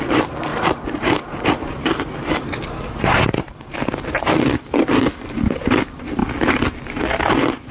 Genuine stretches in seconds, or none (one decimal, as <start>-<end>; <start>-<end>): 0.0-0.5; 4.2-7.7